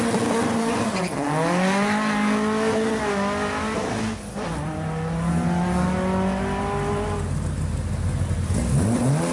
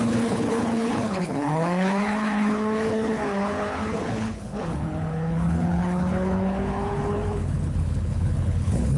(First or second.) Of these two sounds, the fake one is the second